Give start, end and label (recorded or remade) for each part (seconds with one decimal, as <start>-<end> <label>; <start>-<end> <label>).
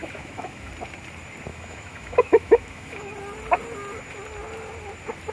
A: 0.0-0.7 remade; 0.7-1.5 recorded; 1.5-3.1 remade; 3.1-5.3 recorded